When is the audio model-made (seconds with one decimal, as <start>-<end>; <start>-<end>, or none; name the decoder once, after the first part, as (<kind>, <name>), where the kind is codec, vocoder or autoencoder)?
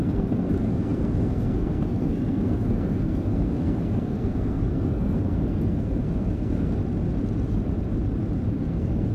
0.0-6.8 (codec, SNAC); 8.6-9.1